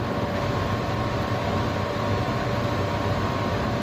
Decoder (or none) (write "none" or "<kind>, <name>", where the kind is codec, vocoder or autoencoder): none